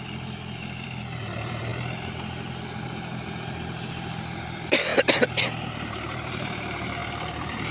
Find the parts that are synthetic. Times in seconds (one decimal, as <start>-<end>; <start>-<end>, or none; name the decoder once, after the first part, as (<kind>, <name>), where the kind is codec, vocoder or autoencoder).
0.0-1.7 (vocoder, BigVGAN v2); 3.9-7.7